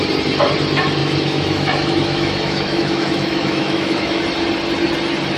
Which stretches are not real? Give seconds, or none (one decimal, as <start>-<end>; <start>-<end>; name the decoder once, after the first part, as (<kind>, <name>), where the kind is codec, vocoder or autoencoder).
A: 1.0-4.2 (autoencoder, DAC-VAE)